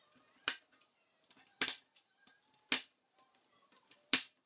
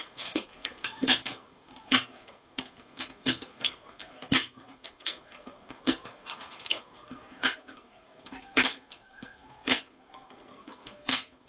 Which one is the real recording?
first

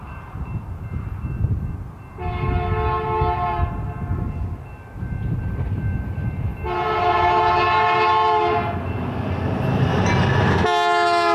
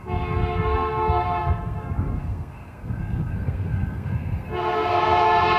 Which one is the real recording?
first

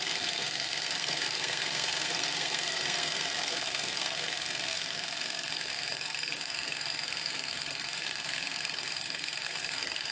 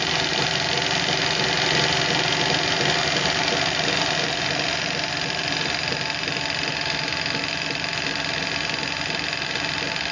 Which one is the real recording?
second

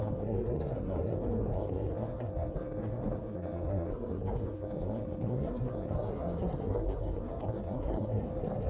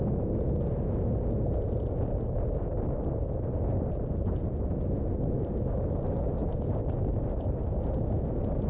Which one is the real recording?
second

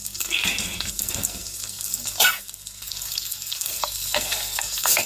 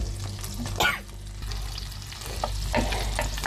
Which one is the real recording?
second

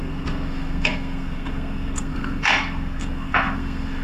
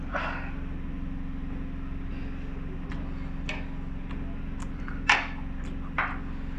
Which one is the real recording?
second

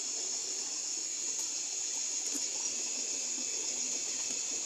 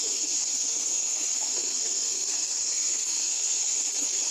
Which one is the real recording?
first